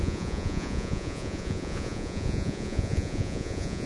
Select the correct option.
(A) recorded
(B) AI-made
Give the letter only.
B